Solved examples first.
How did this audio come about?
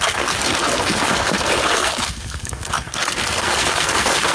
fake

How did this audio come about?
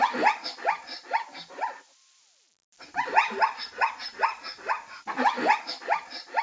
real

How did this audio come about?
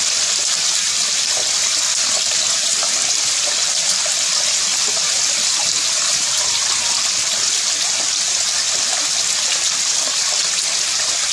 real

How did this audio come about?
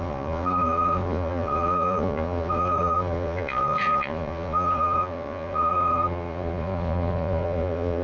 fake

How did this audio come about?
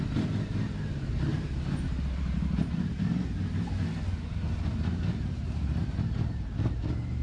fake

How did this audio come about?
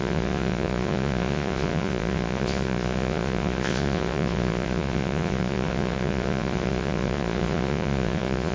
fake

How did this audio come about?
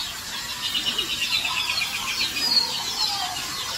real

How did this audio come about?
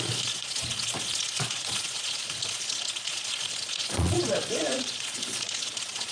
fake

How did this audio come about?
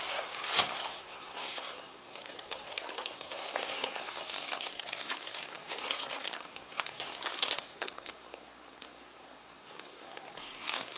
fake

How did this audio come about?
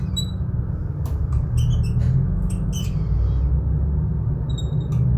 real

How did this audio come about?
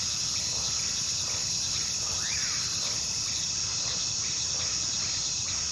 real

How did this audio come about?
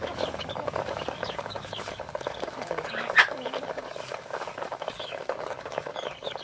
fake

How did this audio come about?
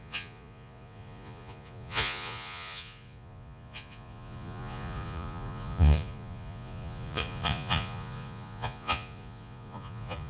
fake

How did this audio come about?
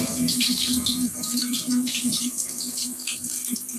fake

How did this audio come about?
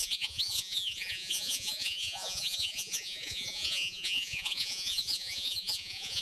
fake